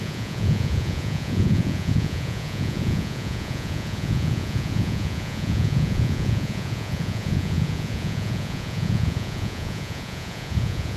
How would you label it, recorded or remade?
remade